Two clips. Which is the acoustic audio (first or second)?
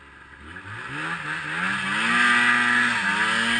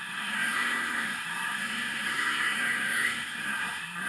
first